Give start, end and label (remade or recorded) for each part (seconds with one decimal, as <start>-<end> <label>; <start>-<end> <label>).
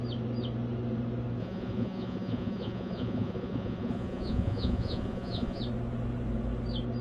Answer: 0.0-1.4 recorded; 1.4-5.6 remade; 5.6-7.0 recorded